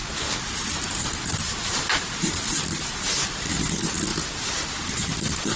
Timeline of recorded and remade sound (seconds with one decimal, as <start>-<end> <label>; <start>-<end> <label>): 0.0-3.4 remade; 3.4-4.1 recorded; 4.1-4.7 remade; 4.7-5.6 recorded